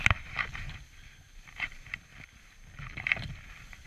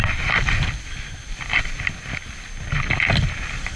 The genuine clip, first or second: second